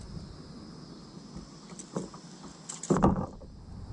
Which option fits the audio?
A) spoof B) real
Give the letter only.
B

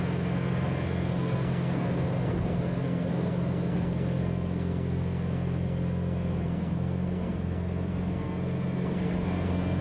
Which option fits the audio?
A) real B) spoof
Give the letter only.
B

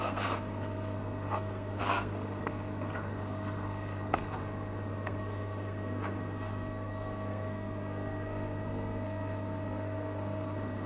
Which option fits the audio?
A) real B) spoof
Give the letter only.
B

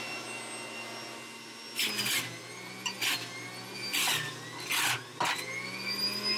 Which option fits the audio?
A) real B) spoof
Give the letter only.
A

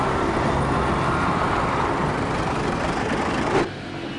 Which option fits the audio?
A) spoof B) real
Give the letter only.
B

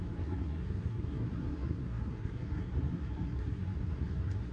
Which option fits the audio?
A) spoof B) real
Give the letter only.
A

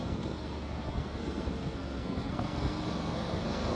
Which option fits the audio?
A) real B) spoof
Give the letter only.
B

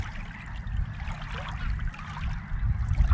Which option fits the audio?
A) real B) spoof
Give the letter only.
A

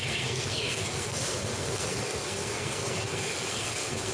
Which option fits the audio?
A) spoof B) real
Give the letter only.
A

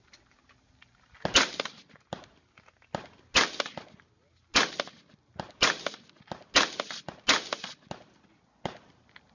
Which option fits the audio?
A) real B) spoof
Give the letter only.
A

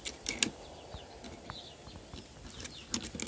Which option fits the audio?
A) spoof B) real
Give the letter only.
B